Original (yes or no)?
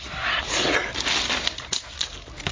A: yes